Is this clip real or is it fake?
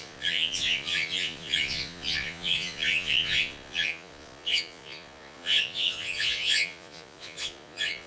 fake